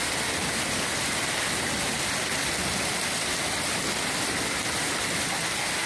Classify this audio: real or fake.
real